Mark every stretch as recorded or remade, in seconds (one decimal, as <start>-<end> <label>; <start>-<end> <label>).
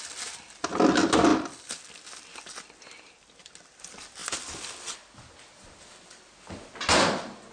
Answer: 0.0-7.5 recorded